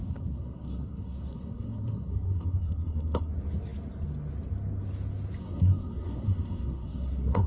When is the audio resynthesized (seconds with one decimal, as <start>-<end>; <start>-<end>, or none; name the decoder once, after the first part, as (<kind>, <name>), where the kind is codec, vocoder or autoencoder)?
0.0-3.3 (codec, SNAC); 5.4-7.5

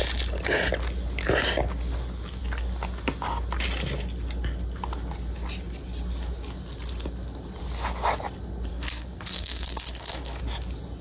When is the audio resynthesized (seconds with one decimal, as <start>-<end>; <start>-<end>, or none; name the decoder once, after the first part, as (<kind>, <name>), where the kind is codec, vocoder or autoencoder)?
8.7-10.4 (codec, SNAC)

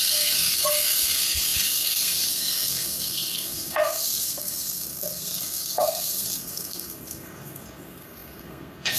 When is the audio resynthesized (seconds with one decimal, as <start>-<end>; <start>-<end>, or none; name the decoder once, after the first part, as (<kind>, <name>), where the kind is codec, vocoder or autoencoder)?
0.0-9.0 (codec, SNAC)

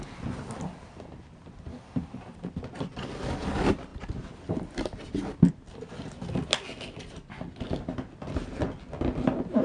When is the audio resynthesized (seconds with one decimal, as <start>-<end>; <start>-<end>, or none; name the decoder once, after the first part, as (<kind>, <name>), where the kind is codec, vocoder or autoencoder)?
none

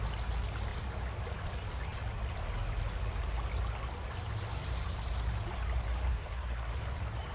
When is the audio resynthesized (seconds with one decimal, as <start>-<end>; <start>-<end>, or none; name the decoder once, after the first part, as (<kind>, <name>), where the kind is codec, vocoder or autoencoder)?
6.1-6.7 (codec, SNAC)